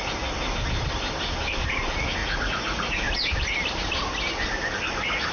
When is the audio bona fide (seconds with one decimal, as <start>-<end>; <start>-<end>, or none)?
0.0-2.2; 2.9-5.3

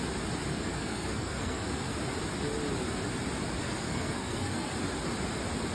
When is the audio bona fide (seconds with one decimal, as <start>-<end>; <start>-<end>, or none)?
0.0-0.5; 2.0-3.6; 4.7-5.7

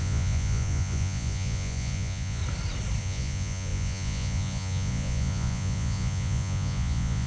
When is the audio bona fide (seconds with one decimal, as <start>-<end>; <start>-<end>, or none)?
2.4-3.0

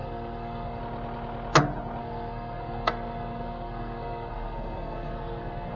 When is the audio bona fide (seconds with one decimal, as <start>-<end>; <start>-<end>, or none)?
0.8-2.0

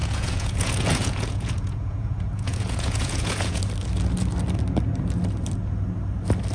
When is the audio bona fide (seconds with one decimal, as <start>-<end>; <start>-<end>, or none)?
3.6-6.5

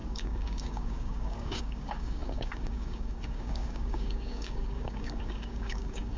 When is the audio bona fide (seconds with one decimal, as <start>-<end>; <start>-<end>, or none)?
none

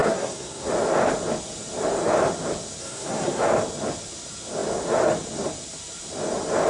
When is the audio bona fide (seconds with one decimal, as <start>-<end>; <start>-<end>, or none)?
0.7-2.8; 3.4-6.7